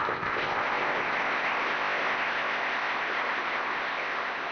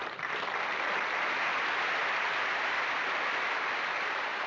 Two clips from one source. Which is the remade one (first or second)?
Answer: first